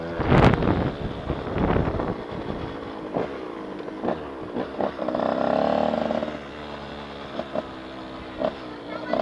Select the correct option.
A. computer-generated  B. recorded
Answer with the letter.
B